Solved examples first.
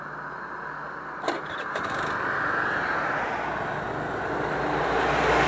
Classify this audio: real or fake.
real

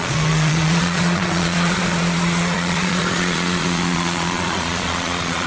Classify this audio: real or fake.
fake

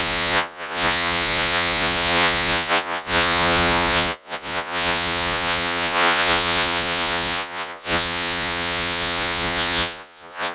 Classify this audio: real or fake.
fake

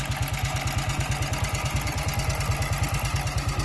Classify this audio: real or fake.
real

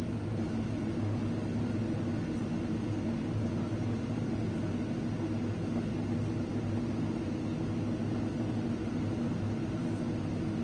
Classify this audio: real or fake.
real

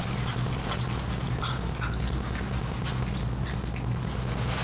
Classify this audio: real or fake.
real